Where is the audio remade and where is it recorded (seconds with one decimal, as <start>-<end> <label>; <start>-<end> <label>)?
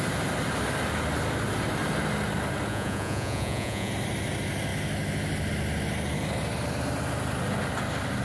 0.0-2.7 recorded; 2.7-3.9 remade; 3.9-8.2 recorded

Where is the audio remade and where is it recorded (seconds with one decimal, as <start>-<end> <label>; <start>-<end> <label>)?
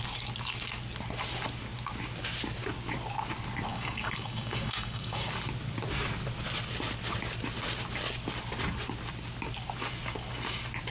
0.0-3.7 recorded; 3.7-5.3 remade; 5.3-10.9 recorded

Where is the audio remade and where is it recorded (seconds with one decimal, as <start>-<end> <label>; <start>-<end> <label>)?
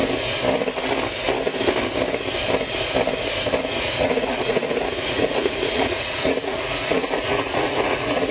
0.0-3.6 recorded; 3.6-8.3 remade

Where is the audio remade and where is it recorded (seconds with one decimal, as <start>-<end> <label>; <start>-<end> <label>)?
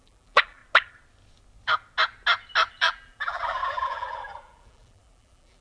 0.0-0.6 remade; 0.6-2.7 recorded; 2.7-5.6 remade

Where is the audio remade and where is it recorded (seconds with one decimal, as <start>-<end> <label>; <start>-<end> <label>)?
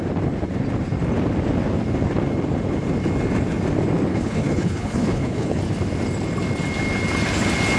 0.0-4.1 recorded; 4.1-5.6 remade; 5.6-7.8 recorded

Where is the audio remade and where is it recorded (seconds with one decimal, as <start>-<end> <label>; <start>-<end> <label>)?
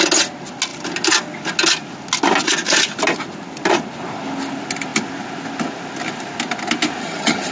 0.0-7.0 recorded; 7.0-7.5 remade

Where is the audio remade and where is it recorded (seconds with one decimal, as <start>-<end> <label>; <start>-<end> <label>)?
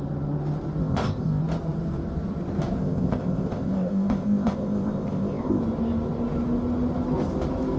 0.0-0.8 recorded; 0.8-1.4 remade; 1.4-2.8 recorded; 2.8-5.6 remade; 5.6-7.8 recorded